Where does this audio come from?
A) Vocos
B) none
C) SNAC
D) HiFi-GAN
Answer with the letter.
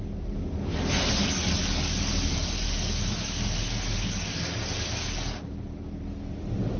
B